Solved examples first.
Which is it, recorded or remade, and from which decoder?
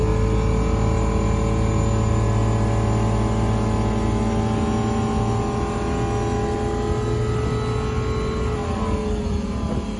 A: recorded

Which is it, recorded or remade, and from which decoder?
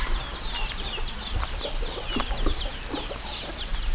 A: recorded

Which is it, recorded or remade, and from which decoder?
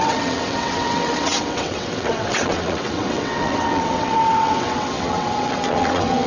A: remade, vocoder, WaveNeXt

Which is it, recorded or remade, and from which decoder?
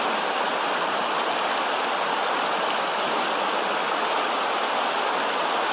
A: recorded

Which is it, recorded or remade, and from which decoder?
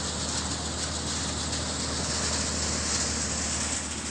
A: recorded